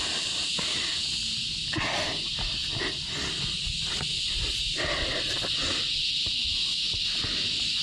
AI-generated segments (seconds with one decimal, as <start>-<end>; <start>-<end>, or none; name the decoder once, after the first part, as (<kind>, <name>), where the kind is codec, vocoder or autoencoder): none